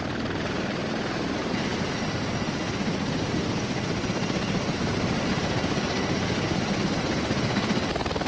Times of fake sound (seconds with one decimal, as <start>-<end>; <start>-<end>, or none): none